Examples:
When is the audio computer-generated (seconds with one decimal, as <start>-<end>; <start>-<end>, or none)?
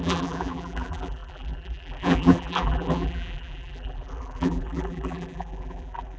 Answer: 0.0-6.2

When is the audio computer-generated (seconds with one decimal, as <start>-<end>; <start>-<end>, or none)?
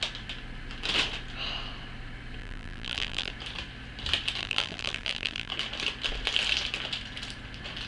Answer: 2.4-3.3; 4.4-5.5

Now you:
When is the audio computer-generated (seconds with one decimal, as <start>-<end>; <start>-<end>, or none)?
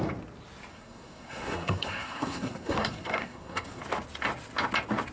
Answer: 0.7-3.8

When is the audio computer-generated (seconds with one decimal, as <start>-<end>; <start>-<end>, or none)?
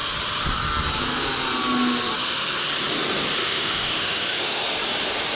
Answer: 3.4-4.6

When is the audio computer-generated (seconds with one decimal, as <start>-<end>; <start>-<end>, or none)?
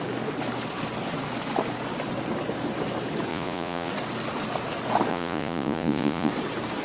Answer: 3.3-3.9; 5.1-6.3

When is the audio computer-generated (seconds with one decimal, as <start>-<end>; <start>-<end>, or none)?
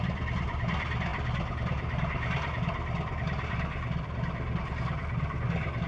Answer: none